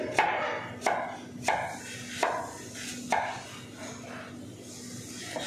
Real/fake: real